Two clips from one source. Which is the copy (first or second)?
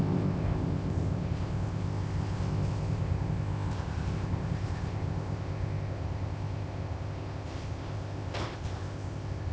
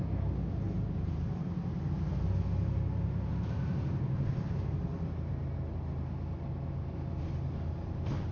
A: first